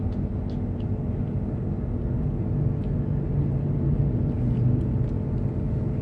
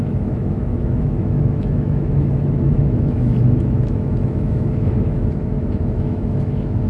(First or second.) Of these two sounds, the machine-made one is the second